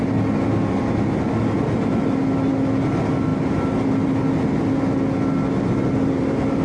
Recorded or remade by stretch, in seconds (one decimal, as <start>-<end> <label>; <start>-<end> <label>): 0.0-6.6 recorded